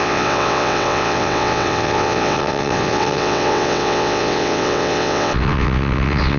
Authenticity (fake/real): fake